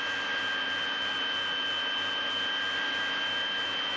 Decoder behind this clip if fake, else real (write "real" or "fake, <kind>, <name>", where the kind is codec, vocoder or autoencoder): real